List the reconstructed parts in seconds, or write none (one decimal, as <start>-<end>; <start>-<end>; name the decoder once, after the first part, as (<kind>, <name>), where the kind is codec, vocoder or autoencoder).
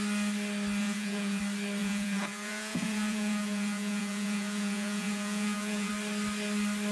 0.8-1.4 (vocoder, Vocos); 1.8-5.9